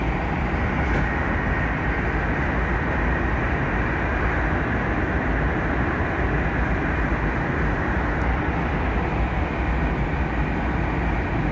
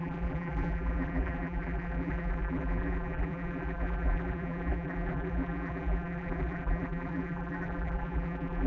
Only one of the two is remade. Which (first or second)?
second